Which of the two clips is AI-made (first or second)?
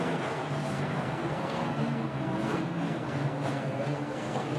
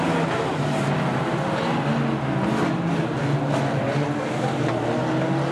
first